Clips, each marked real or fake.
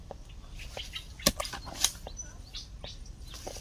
real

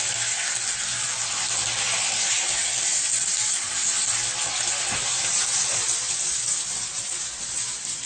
real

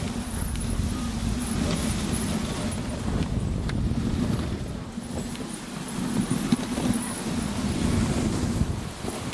real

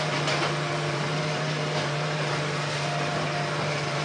fake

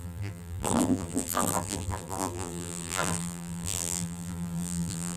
fake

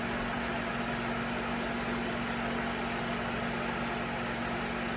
real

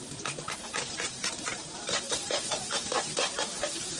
fake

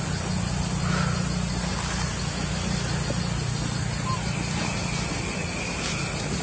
real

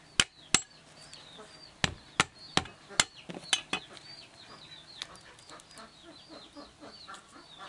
real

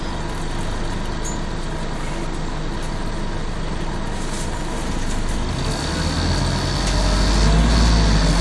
real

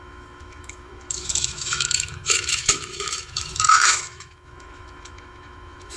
fake